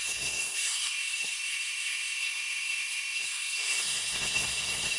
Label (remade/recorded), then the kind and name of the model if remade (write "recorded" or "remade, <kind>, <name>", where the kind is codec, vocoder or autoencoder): remade, codec, SNAC